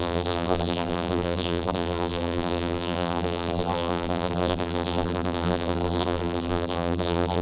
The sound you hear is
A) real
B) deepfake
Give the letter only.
B